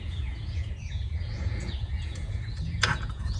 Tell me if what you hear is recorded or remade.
remade